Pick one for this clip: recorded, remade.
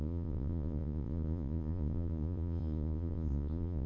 remade